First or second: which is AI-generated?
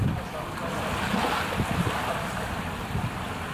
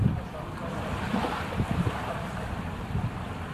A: second